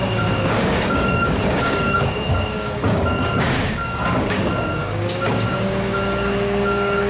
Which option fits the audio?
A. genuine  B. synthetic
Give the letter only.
B